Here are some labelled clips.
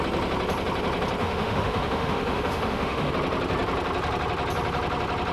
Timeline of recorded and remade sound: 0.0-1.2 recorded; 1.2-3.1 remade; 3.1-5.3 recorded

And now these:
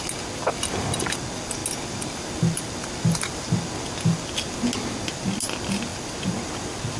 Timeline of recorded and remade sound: 0.0-7.0 recorded

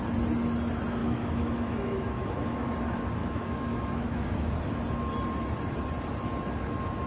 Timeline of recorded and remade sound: 0.0-1.0 recorded; 1.0-2.7 remade; 2.7-3.2 recorded; 3.2-4.6 remade; 4.6-7.1 recorded

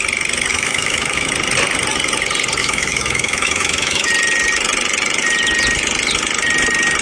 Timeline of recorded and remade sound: 0.0-0.5 recorded; 0.5-1.3 remade; 1.3-2.6 recorded; 2.6-4.1 remade; 4.1-7.0 recorded

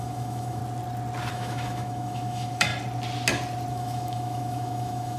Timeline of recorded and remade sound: 0.0-0.6 remade; 0.6-1.3 recorded; 1.3-2.7 remade; 2.7-3.7 recorded; 3.7-5.2 remade

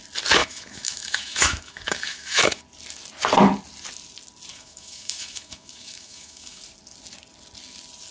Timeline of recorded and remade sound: 0.0-0.4 recorded; 0.4-2.6 remade; 2.6-4.5 recorded; 4.5-6.6 remade; 6.6-8.1 recorded